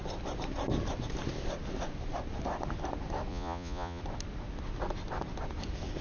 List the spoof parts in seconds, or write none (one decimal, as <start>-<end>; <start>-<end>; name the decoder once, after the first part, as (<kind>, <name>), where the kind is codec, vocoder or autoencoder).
3.3-4.0 (vocoder, Vocos)